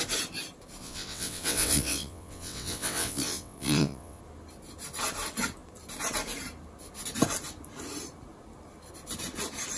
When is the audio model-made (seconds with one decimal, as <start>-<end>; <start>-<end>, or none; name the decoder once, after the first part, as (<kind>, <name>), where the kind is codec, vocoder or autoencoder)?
0.8-4.2 (vocoder, WaveNeXt)